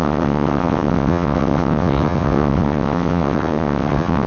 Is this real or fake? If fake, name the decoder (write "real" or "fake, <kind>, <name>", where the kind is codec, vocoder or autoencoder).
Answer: fake, vocoder, WaveNeXt